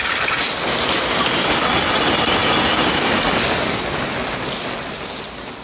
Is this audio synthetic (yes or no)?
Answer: no